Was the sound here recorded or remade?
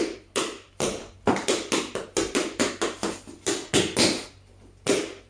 recorded